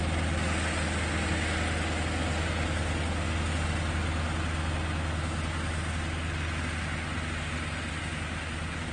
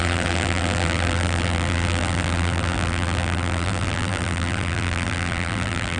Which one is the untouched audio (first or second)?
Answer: first